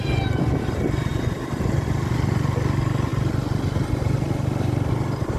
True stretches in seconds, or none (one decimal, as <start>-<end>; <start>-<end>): 0.0-5.4